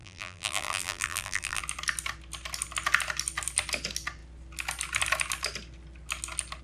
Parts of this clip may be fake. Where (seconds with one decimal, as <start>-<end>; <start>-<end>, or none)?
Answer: 0.0-1.6